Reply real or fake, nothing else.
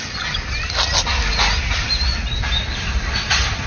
real